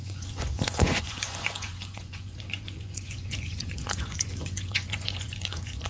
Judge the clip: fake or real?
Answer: fake